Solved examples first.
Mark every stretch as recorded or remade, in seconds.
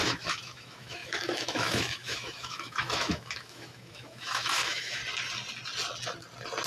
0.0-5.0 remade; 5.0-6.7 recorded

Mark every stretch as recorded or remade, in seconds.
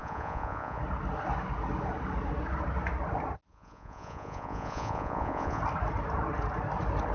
0.0-0.8 remade; 0.8-3.5 recorded; 3.5-5.6 remade; 5.6-7.1 recorded